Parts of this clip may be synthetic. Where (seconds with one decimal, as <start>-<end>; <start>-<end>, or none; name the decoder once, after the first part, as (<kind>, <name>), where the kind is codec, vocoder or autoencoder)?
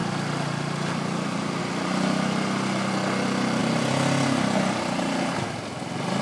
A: none